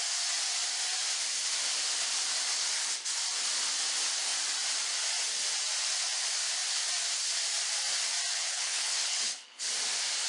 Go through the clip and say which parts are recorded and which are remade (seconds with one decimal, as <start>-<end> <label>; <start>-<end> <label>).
0.0-8.3 recorded; 8.3-9.7 remade; 9.7-10.3 recorded